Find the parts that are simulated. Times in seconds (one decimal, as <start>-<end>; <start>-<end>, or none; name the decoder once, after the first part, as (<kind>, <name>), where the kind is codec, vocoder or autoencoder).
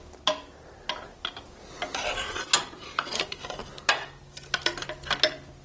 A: none